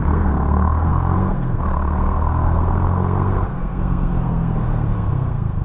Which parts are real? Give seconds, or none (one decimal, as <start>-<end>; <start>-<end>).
none